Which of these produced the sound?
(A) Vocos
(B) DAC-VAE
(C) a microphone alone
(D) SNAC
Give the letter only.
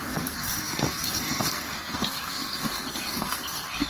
D